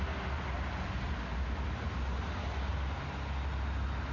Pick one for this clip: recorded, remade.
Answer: recorded